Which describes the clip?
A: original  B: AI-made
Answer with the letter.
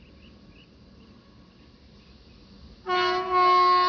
A